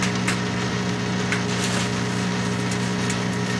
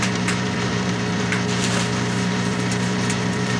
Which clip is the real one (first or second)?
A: first